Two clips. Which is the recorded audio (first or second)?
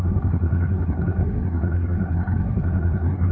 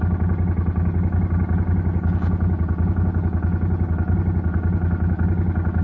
second